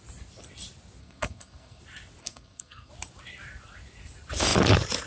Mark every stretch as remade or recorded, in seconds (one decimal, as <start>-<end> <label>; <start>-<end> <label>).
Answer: 0.0-1.0 recorded; 1.0-1.8 remade; 1.8-2.2 recorded; 2.2-2.9 remade; 2.9-5.1 recorded